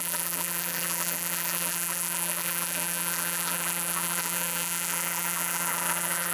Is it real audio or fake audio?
fake